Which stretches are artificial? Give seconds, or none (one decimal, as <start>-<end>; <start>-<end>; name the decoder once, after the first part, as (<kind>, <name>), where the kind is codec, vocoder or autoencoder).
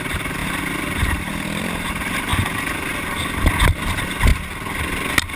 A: 0.0-2.3 (vocoder, BigVGAN v2); 3.8-4.3